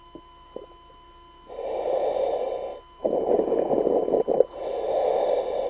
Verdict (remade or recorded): recorded